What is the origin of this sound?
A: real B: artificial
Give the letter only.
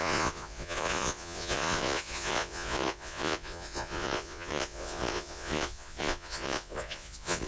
B